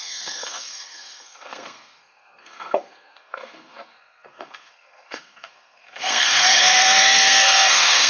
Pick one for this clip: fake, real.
fake